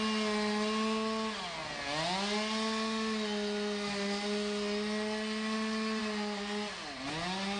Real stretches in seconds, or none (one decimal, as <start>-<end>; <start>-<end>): 0.0-7.6